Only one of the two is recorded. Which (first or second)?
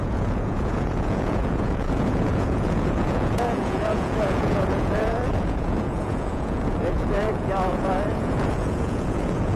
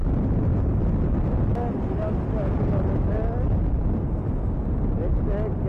second